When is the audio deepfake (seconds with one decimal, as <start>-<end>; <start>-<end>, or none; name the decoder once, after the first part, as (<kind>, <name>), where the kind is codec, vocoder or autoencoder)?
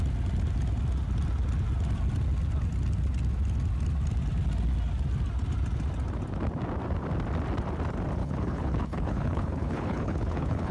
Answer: 8.2-10.7 (codec, HILCodec)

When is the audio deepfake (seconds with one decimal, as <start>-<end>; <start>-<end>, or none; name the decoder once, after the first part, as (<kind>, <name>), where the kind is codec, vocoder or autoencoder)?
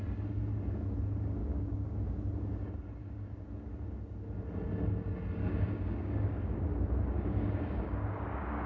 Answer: 1.4-2.2 (codec, DAC); 3.0-3.5; 5.4-8.7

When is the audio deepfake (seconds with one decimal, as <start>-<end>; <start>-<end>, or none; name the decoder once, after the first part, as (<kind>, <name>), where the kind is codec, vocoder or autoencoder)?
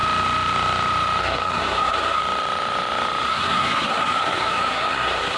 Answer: 1.2-2.2 (codec, SNAC); 3.3-5.4